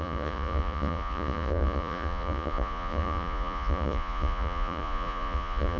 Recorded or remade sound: remade